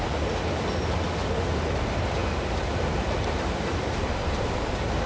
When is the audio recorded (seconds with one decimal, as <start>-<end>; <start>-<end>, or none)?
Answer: 0.0-1.2; 1.8-2.2